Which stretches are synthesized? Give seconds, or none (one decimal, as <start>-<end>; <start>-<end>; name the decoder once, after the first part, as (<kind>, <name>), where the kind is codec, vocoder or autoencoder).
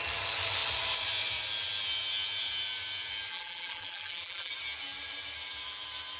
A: 3.3-4.5 (vocoder, BigVGAN v2)